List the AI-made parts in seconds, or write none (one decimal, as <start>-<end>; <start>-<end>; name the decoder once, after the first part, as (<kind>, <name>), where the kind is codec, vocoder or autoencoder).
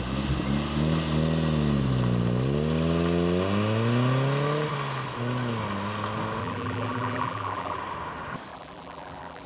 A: 6.4-7.8 (vocoder, BigVGAN v2); 8.5-9.5